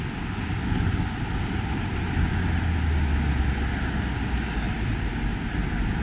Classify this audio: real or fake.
real